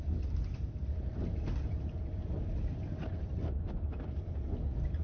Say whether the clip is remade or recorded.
remade